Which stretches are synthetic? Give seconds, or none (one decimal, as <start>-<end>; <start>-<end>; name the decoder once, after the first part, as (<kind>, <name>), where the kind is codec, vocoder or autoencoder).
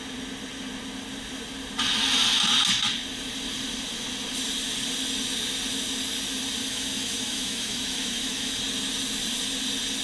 6.7-8.6 (autoencoder, DAC-VAE)